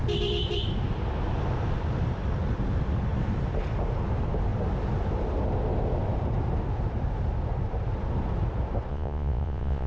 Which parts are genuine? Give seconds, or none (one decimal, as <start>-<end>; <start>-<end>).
0.0-8.9